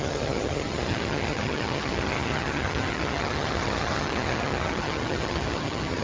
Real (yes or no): no